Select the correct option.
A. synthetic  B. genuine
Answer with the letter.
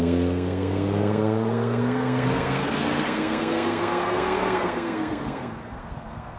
A